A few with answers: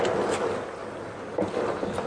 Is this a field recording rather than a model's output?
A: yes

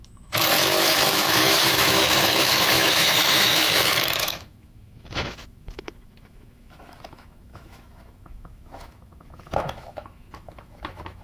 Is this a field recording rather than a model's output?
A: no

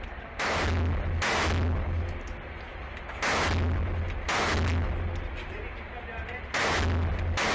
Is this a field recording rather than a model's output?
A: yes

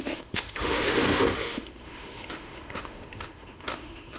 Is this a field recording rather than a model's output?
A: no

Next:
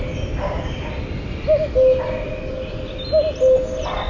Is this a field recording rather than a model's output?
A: yes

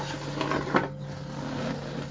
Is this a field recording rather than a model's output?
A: yes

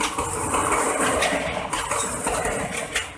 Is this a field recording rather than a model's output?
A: yes